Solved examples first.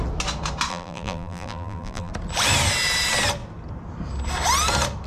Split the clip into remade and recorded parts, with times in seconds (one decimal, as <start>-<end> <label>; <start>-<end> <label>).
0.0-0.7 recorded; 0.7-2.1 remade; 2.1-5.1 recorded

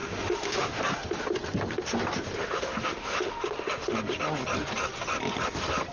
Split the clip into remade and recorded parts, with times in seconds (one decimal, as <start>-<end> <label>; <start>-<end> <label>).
0.0-0.8 remade; 0.8-2.4 recorded; 2.4-4.0 remade; 4.0-5.9 recorded

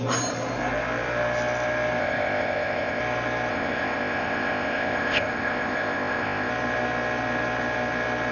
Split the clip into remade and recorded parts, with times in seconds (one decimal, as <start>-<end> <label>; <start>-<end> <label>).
0.0-2.0 recorded; 2.0-3.0 remade; 3.0-3.5 recorded; 3.5-6.5 remade; 6.5-8.3 recorded

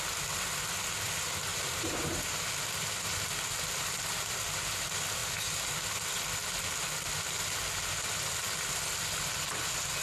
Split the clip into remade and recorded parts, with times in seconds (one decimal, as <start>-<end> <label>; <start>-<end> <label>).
0.0-1.5 recorded; 1.5-2.6 remade; 2.6-10.0 recorded

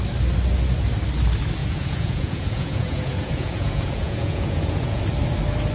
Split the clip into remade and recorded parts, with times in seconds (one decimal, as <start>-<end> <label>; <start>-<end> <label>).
0.0-1.6 recorded; 1.6-5.0 remade; 5.0-5.7 recorded

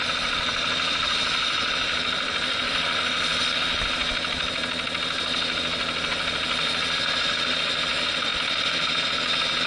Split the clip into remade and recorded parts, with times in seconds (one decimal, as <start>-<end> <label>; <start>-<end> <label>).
0.0-3.3 remade; 3.3-7.6 recorded; 7.6-8.3 remade; 8.3-9.7 recorded

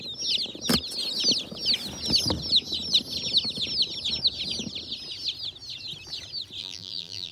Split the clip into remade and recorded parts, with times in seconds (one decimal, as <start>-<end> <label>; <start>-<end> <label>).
0.0-6.6 recorded; 6.6-7.3 remade